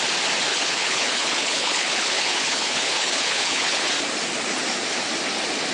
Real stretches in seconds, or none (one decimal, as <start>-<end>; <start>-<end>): 0.0-0.5; 3.9-5.7